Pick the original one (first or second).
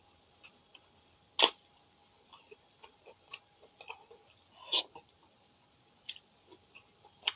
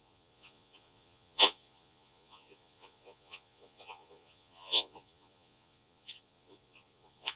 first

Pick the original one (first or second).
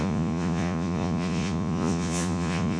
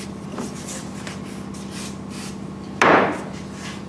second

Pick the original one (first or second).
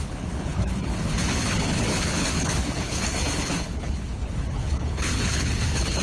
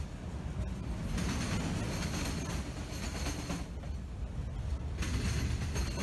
second